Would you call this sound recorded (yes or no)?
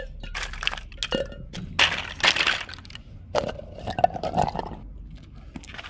yes